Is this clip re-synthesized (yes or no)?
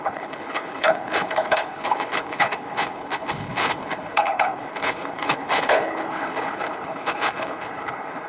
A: yes